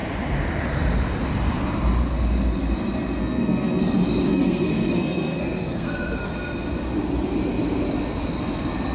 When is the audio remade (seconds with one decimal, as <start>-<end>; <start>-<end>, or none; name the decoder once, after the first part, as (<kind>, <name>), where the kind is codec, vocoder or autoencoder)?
3.2-3.8 (codec, SNAC); 4.3-6.3